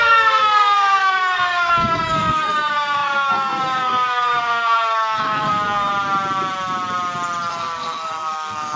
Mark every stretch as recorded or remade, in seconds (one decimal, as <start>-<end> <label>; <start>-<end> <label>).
0.0-5.9 remade; 5.9-7.5 recorded; 7.5-8.8 remade